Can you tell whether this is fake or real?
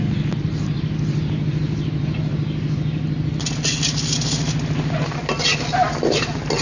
real